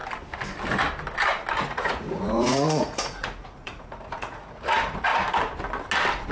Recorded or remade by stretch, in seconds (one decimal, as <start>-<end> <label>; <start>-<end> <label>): 0.0-1.5 recorded; 1.5-5.1 remade; 5.1-6.3 recorded